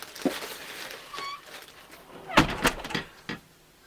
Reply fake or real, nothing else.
real